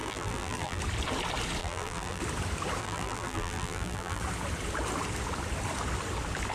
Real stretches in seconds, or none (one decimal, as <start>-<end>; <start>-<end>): 0.8-1.6; 2.2-2.8; 4.2-6.5